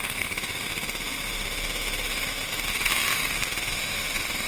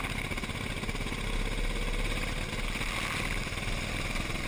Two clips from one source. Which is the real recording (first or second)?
second